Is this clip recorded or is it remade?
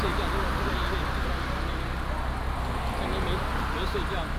recorded